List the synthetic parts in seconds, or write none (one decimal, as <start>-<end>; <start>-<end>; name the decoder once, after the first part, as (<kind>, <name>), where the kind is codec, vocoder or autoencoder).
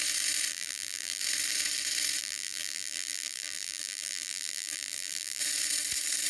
0.5-1.2 (vocoder, BigVGAN v2); 2.2-5.4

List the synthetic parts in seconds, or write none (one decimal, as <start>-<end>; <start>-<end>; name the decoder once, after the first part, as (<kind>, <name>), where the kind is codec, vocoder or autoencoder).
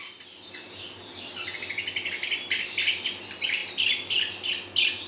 none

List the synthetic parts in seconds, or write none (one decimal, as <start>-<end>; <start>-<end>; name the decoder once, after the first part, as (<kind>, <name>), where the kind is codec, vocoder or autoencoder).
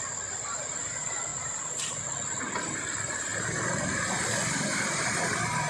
1.3-2.0 (vocoder, BigVGAN v2); 4.7-5.7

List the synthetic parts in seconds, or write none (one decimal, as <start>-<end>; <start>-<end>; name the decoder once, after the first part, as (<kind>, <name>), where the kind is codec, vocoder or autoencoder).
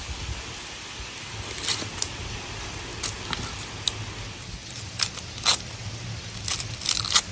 none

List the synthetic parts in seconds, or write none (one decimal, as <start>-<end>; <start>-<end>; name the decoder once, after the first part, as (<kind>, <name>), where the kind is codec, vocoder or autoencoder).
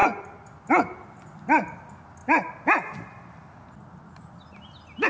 none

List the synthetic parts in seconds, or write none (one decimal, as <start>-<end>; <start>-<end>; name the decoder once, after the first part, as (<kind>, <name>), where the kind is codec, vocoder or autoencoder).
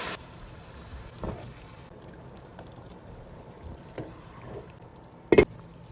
0.0-4.9 (vocoder, BigVGAN v2)